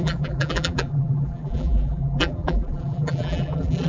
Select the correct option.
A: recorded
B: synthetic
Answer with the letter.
B